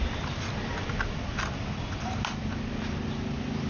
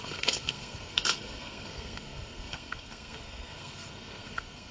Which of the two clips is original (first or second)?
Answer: first